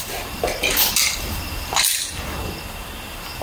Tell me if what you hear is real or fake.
real